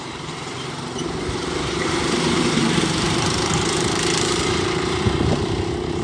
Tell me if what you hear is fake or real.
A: fake